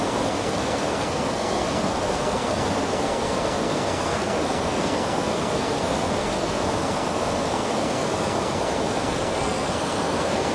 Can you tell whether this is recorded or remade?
remade